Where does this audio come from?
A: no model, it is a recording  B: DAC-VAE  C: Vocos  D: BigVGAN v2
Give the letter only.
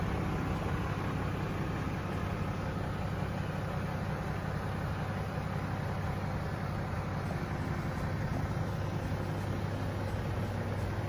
A